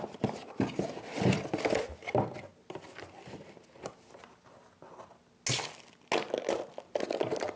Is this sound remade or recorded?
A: recorded